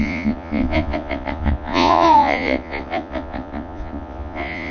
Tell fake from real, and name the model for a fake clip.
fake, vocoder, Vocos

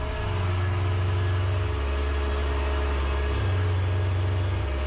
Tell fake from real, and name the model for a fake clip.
real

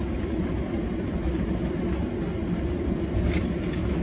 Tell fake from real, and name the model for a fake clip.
real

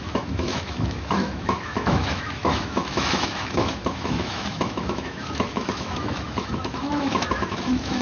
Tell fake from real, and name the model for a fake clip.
fake, autoencoder, DAC-VAE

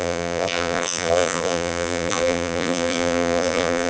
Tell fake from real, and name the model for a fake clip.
fake, vocoder, BigVGAN v2